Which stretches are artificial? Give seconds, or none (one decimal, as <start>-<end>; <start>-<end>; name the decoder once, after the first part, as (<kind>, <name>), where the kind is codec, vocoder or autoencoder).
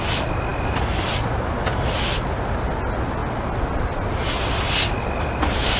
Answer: 0.5-1.1 (vocoder, BigVGAN v2)